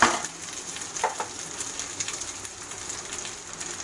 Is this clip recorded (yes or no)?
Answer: yes